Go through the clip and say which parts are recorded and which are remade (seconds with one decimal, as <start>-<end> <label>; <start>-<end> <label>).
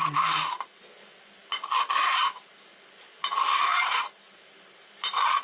0.0-5.4 recorded